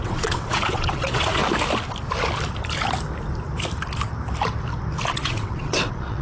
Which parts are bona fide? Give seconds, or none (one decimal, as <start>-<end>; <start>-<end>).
1.4-5.1

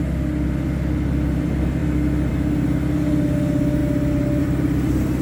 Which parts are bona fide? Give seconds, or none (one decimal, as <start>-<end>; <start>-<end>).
0.0-5.2

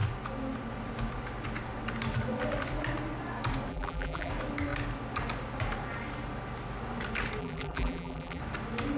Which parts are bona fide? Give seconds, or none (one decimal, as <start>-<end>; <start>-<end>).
0.0-3.7; 4.3-7.4; 8.4-9.0

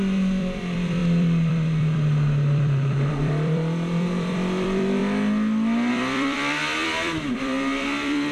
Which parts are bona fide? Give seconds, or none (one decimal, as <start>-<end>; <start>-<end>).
5.0-5.9

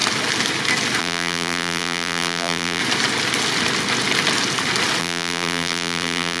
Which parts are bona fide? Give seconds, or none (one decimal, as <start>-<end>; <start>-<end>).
0.0-1.0; 2.8-5.0

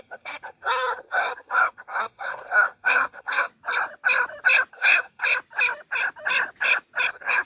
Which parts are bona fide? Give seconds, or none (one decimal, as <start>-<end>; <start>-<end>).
3.5-4.7; 5.2-7.1

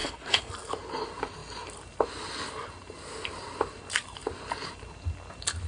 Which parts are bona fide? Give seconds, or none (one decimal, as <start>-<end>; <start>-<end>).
0.5-5.7

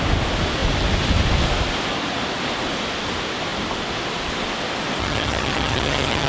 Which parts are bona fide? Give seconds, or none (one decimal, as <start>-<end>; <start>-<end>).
0.0-5.0